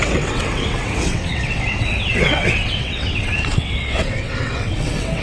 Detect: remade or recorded remade